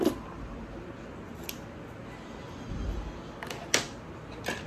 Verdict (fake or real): real